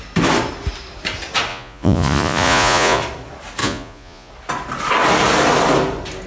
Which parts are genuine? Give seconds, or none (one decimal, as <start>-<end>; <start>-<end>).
0.0-1.5; 3.0-3.6; 4.3-6.3